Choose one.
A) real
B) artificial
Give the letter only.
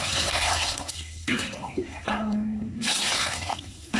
B